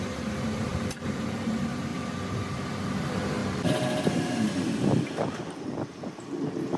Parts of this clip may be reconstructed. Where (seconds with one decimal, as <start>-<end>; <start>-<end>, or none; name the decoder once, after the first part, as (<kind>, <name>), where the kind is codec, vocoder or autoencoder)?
0.0-1.9 (vocoder, BigVGAN v2); 2.9-3.4; 5.1-5.9